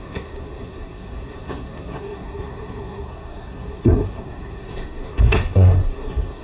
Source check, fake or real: fake